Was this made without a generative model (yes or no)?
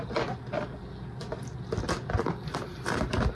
yes